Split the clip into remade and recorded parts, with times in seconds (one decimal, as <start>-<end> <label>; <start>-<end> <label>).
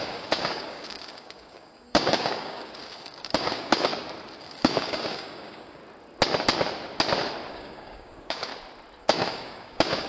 0.0-3.9 remade; 3.9-4.4 recorded; 4.4-5.8 remade; 5.8-7.5 recorded; 7.5-8.5 remade; 8.5-9.0 recorded; 9.0-10.1 remade